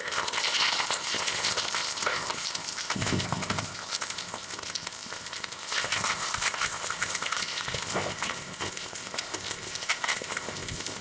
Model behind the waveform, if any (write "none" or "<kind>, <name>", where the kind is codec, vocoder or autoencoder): codec, ZipCodec